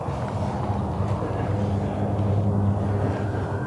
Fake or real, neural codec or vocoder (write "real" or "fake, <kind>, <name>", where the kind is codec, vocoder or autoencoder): real